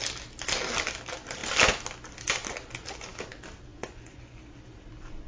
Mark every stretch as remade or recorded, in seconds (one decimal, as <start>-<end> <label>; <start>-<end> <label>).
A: 0.0-3.7 recorded; 3.7-4.4 remade; 4.4-5.3 recorded